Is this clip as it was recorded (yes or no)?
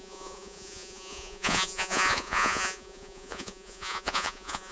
no